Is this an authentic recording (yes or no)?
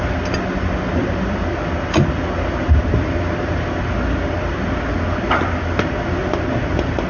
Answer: yes